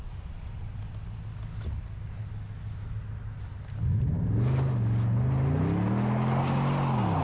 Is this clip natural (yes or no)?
yes